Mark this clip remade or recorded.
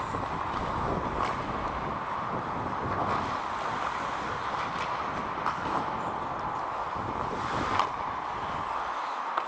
recorded